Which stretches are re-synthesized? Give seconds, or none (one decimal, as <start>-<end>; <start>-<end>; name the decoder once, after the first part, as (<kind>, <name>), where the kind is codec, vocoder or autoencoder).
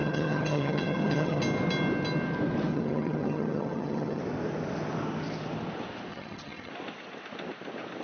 0.0-1.4 (vocoder, HiFi-GAN); 2.7-4.2; 6.1-6.7